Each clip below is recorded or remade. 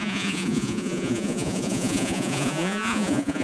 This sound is remade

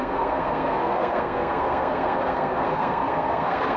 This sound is remade